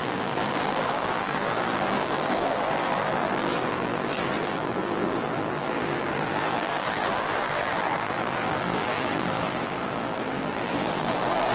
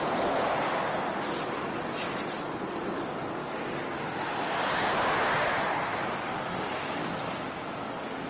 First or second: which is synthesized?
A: first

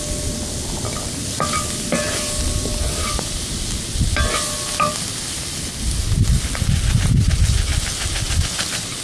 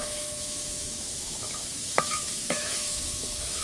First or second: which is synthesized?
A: second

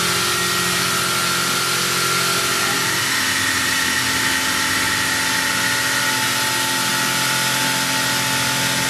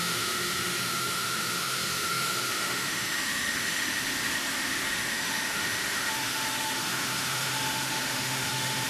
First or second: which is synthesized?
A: second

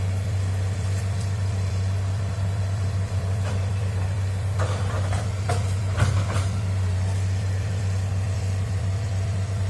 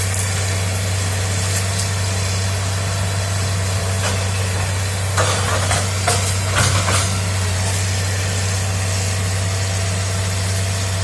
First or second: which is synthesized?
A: first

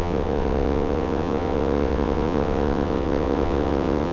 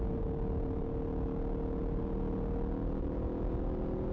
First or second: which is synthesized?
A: first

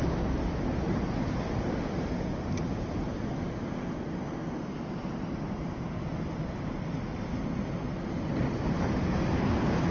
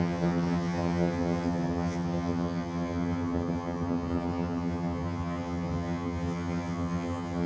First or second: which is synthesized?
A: second